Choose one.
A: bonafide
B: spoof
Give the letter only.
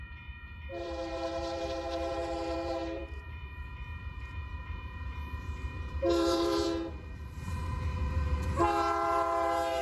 B